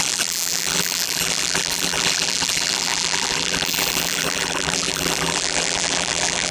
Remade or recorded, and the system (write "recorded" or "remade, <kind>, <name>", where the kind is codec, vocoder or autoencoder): remade, vocoder, BigVGAN v2